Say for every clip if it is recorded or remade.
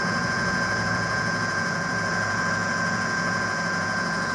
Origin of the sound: remade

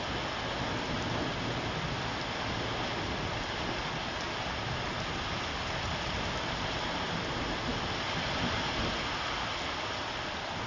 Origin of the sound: recorded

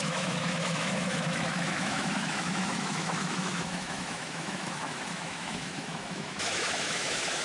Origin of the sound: remade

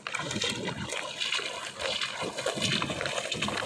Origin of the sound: recorded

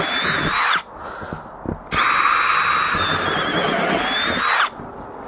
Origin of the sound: recorded